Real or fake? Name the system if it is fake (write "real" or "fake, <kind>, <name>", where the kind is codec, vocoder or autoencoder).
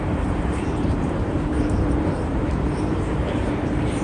fake, vocoder, BigVGAN v2